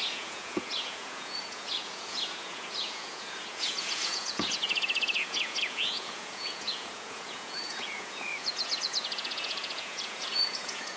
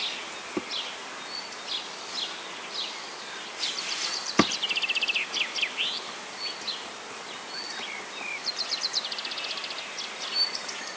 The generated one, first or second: first